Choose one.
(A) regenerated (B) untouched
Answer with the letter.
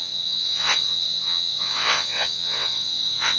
A